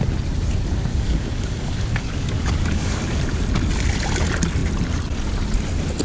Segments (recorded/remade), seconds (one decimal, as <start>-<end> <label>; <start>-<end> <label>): 0.0-0.9 recorded; 0.9-3.2 remade; 3.2-6.0 recorded

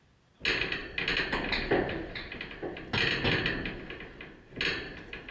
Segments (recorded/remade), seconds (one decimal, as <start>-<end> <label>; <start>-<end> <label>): 0.0-5.3 recorded

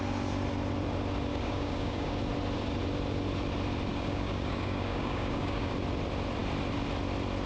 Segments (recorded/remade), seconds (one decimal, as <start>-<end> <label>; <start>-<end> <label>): 0.0-1.3 recorded; 1.3-2.2 remade; 2.2-3.9 recorded; 3.9-5.7 remade; 5.7-7.5 recorded

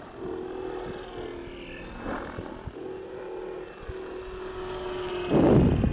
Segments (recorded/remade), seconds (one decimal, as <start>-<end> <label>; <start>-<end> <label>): 0.0-4.5 recorded; 4.5-5.1 remade; 5.1-5.9 recorded

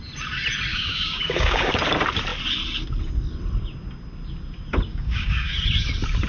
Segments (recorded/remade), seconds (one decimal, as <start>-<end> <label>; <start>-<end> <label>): 0.0-0.7 recorded; 0.7-1.7 remade; 1.7-4.9 recorded; 4.9-5.5 remade; 5.5-6.3 recorded

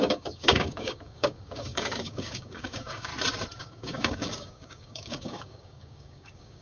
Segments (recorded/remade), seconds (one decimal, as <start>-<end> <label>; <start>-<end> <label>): 0.0-3.1 remade; 3.1-3.6 recorded; 3.6-6.6 remade

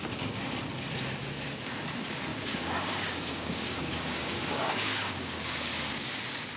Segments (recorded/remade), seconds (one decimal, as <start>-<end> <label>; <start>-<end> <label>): 0.0-2.3 recorded; 2.3-5.9 remade; 5.9-6.6 recorded